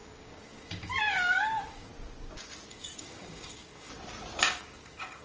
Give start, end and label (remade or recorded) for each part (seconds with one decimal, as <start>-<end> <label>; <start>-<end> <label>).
0.0-1.9 remade; 1.9-2.7 recorded; 2.7-3.9 remade; 3.9-4.4 recorded; 4.4-5.2 remade